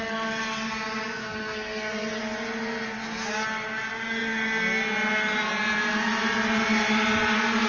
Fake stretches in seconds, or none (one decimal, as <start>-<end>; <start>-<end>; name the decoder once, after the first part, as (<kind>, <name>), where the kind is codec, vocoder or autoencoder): 1.2-2.2 (codec, SNAC)